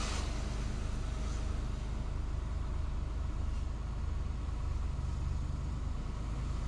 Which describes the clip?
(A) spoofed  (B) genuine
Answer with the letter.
B